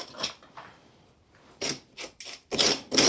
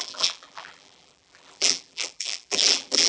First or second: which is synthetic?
second